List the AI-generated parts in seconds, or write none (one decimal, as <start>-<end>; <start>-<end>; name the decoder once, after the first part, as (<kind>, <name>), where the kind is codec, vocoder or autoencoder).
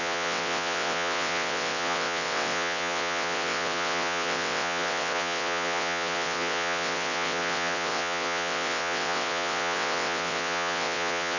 0.0-11.4 (vocoder, WaveNeXt)